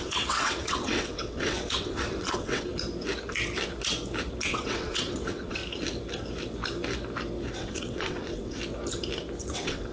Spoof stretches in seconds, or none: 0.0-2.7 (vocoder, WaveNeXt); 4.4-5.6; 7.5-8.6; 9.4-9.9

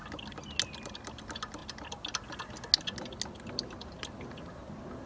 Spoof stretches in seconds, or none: none

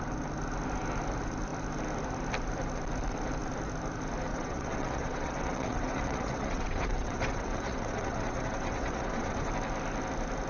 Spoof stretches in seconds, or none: 4.3-9.5 (vocoder, WaveNeXt)

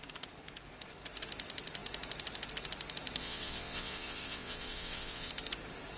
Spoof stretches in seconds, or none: 3.2-5.3 (vocoder, WaveNeXt)